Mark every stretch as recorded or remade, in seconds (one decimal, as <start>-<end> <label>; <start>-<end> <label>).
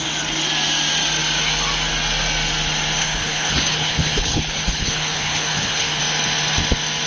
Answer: 0.0-3.0 recorded; 3.0-6.0 remade; 6.0-7.1 recorded